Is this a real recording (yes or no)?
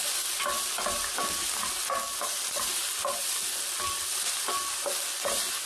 yes